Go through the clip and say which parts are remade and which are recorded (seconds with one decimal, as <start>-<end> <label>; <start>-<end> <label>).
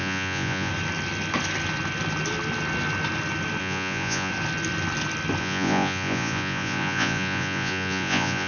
0.0-0.7 remade; 0.7-3.6 recorded; 3.6-4.3 remade; 4.3-5.4 recorded; 5.4-8.5 remade